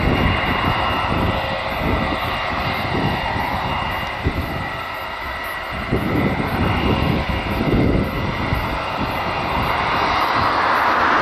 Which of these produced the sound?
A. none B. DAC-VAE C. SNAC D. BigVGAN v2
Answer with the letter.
A